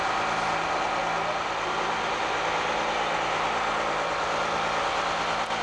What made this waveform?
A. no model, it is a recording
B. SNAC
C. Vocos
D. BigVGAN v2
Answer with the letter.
A